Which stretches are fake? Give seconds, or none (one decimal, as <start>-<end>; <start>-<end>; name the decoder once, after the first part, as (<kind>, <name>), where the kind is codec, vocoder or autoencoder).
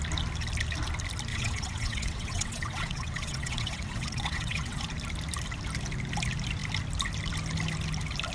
1.3-4.8 (vocoder, WaveNeXt)